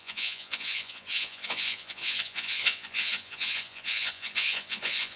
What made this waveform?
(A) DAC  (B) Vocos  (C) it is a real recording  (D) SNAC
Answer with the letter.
B